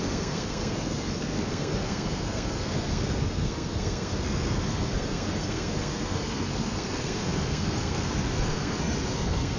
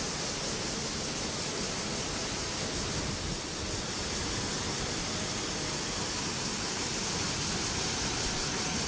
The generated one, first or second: first